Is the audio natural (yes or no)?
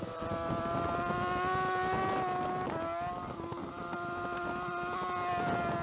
yes